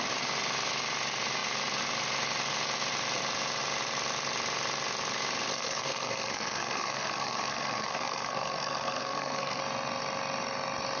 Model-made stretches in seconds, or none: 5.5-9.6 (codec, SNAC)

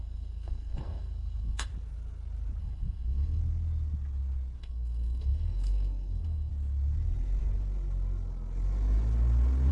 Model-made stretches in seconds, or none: 0.0-1.7 (codec, SNAC); 2.6-3.4; 4.6-6.5